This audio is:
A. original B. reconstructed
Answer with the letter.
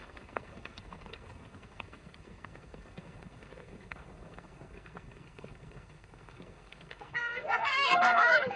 B